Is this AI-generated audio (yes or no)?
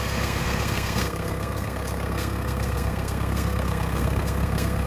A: yes